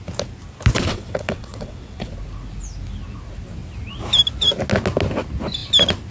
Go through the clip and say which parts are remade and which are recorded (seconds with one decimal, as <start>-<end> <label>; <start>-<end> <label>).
0.0-0.9 recorded; 0.9-2.1 remade; 2.1-6.1 recorded